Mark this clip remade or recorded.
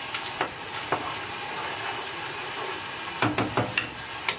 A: recorded